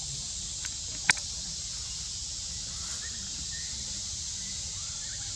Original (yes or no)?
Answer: yes